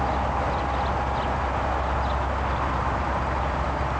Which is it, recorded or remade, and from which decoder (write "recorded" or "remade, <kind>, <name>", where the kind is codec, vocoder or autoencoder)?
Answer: recorded